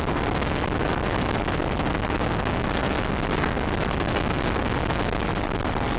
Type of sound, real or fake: real